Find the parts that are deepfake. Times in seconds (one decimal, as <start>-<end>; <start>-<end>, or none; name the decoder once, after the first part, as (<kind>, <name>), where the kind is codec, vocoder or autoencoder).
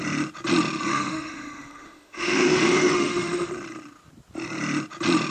0.9-3.5 (autoencoder, DAC-VAE)